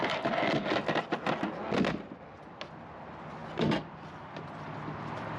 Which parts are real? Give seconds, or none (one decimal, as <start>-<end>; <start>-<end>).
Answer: 0.0-5.4